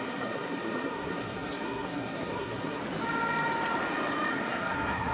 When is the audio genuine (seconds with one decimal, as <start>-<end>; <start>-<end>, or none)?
2.8-4.3